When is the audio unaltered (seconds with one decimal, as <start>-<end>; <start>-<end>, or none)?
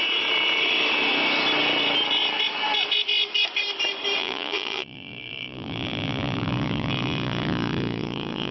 0.0-4.2